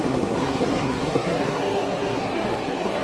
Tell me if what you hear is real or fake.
fake